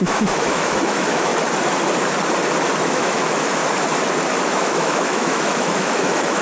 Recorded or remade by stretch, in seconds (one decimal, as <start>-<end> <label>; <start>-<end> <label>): 0.0-1.3 remade; 1.3-2.8 recorded; 2.8-3.6 remade; 3.6-4.5 recorded; 4.5-6.4 remade